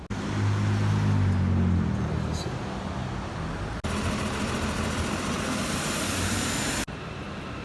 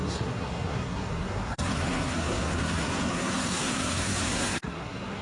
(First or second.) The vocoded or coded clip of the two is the second